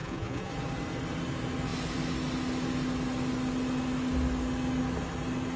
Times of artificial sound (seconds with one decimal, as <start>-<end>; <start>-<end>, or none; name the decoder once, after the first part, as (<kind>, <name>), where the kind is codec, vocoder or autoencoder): 0.0-0.5 (vocoder, Vocos)